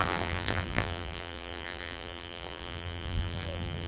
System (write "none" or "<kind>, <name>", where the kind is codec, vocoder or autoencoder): vocoder, BigVGAN v2